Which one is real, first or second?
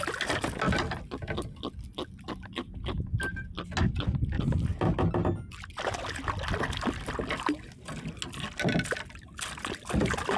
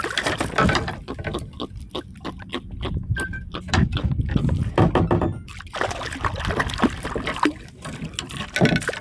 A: first